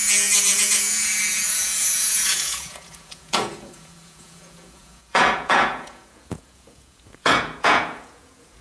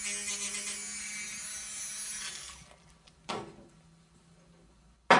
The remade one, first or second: first